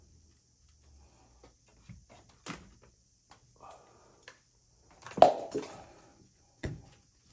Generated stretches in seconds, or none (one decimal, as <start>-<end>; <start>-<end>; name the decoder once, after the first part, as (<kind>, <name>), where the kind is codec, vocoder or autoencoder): 6.1-7.3 (vocoder, Vocos)